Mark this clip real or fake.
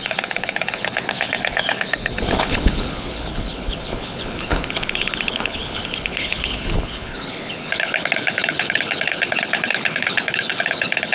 fake